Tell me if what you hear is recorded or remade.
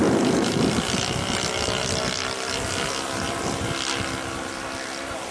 recorded